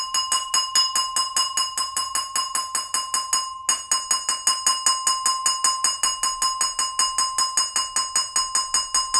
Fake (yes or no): no